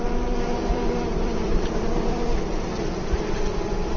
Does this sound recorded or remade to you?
remade